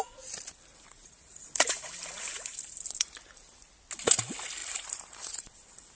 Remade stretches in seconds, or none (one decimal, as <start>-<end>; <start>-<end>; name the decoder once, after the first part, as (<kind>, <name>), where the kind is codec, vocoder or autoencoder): 1.0-3.1 (vocoder, BigVGAN v2); 4.6-5.9